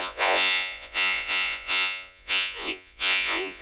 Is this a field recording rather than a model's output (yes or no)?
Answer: no